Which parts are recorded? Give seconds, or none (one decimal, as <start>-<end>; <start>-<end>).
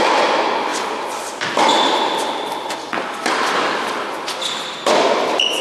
0.0-0.7; 4.1-5.6